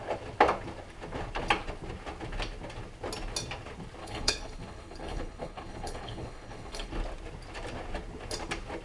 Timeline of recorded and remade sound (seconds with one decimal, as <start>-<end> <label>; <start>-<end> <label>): 0.0-4.0 recorded; 4.0-6.9 remade; 6.9-8.8 recorded